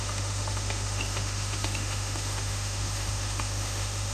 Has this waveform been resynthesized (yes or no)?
yes